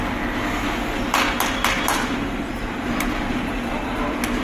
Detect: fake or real real